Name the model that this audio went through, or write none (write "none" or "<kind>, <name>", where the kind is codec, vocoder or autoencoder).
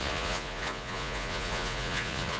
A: vocoder, Vocos